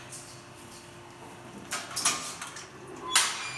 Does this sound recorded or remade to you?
recorded